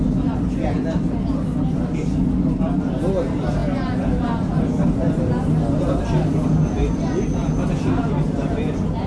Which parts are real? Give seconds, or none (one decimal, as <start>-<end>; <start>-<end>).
0.0-9.1

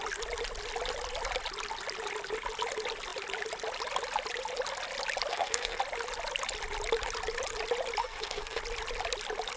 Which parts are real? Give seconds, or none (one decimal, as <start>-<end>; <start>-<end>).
0.0-5.3; 5.8-8.0; 8.6-9.6

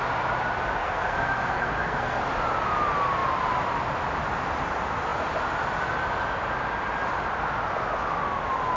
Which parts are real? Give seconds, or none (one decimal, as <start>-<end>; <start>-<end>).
0.0-0.8; 2.2-8.8

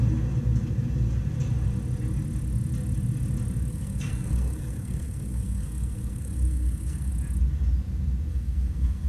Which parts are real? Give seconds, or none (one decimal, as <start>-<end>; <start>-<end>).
0.0-3.7; 7.1-8.3

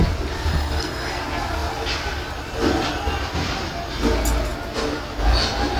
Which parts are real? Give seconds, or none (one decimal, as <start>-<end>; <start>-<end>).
0.0-0.5; 1.2-5.8